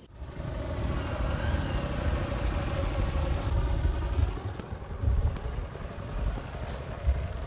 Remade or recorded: recorded